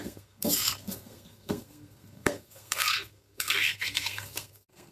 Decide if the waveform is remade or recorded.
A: remade